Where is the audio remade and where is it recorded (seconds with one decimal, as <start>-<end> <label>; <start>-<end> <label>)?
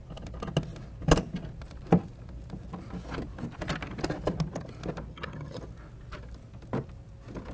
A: 0.0-5.1 recorded; 5.1-5.6 remade; 5.6-7.5 recorded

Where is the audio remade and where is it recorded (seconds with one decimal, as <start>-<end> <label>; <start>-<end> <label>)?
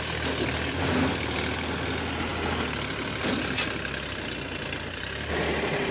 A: 0.0-5.9 recorded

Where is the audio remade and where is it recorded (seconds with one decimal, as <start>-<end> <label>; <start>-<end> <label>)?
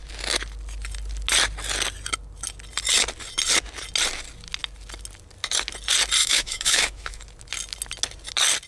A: 0.0-6.2 recorded; 6.2-7.2 remade; 7.2-8.7 recorded